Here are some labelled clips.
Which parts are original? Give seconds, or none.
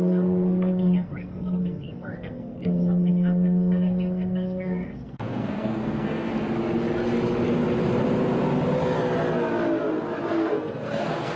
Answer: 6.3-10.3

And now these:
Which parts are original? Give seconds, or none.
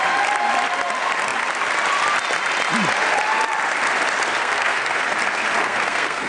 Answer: 0.0-4.4; 5.0-5.6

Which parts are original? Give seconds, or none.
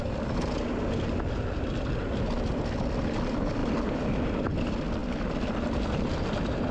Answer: 0.0-6.7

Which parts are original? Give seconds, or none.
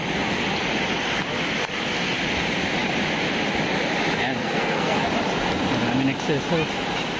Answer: 0.0-4.4; 5.1-7.2